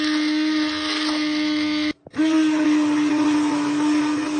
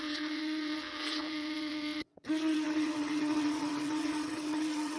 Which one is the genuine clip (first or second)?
first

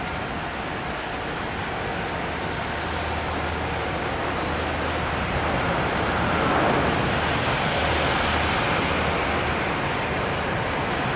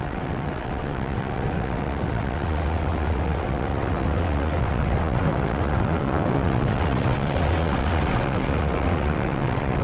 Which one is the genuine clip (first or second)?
first